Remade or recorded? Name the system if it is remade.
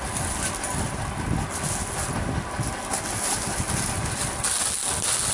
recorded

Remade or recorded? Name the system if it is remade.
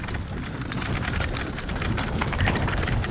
recorded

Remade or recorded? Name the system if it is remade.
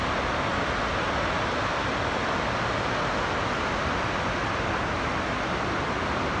recorded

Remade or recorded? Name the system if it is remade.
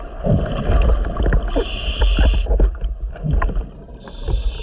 recorded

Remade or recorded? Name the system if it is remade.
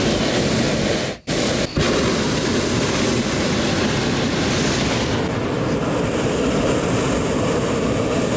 recorded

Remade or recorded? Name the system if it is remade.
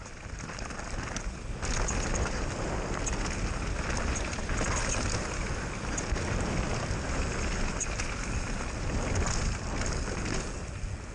recorded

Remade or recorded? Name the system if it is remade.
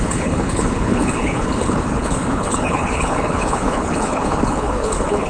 remade, codec, HILCodec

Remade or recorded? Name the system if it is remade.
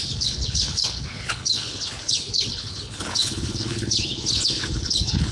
remade, codec, HILCodec